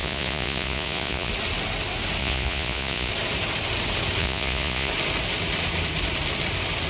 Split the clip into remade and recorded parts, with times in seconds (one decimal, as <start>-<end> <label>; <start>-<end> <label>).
0.0-1.3 remade; 1.3-2.2 recorded; 2.2-3.1 remade; 3.1-4.2 recorded; 4.2-4.9 remade; 4.9-6.9 recorded